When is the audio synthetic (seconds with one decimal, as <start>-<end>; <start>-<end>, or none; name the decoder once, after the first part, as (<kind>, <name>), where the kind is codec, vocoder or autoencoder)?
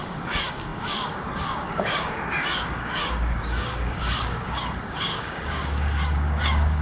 0.0-6.8 (codec, DAC)